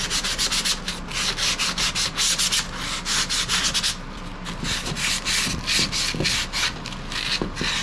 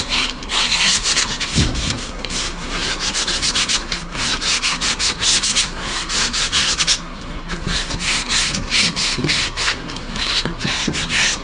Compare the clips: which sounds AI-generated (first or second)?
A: second